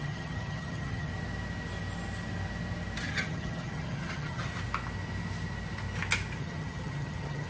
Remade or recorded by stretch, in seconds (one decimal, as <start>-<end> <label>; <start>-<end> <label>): 0.0-1.1 remade; 1.1-3.1 recorded; 3.1-4.5 remade; 4.5-6.4 recorded; 6.4-7.5 remade